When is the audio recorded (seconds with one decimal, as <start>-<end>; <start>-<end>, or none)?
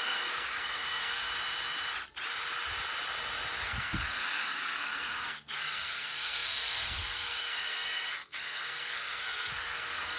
1.2-3.6